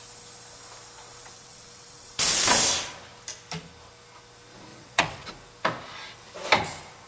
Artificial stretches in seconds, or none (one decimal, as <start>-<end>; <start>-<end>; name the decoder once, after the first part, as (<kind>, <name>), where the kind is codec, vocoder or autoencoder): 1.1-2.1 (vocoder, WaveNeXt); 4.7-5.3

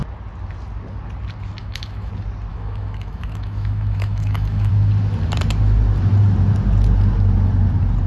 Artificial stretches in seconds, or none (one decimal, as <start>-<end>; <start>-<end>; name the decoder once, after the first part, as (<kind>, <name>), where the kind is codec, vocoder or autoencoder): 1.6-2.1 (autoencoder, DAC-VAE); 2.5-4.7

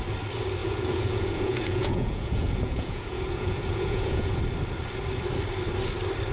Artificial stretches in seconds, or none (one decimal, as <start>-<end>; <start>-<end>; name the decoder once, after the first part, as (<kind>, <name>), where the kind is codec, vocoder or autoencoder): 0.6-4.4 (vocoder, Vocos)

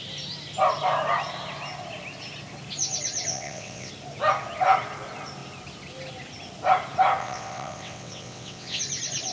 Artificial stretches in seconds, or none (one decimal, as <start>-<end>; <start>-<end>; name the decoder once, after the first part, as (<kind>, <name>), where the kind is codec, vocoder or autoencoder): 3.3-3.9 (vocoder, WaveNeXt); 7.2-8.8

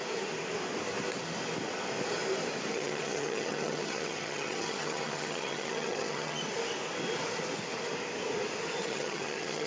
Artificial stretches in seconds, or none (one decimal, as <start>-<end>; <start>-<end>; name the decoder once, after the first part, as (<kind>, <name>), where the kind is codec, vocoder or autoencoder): 2.7-6.4 (vocoder, HiFi-GAN); 8.8-9.7

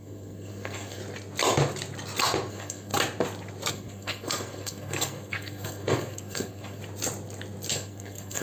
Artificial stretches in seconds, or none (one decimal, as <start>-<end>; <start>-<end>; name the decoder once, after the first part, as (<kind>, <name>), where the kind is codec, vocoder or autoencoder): 0.0-1.0 (codec, SNAC); 2.5-2.9; 3.7-6.8; 7.7-8.4

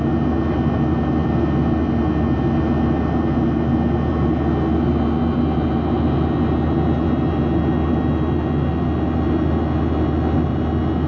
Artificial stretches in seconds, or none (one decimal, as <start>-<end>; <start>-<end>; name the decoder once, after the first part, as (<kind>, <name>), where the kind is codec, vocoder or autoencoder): none

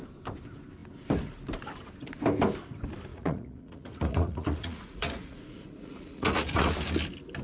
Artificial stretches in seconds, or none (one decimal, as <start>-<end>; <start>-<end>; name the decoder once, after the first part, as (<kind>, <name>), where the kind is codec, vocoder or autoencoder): 3.1-6.7 (vocoder, Vocos)